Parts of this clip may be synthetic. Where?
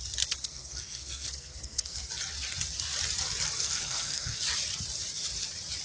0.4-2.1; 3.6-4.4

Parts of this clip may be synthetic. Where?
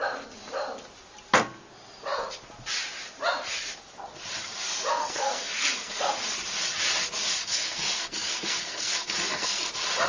5.0-6.1; 7.4-9.7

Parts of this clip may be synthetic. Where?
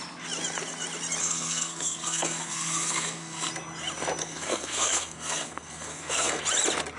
1.2-3.5; 4.2-6.4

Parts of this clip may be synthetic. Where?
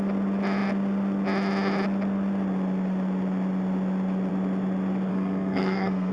5.1-6.1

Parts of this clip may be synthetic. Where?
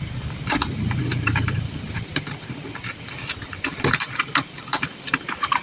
none